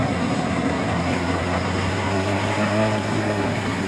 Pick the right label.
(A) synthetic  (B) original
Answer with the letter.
A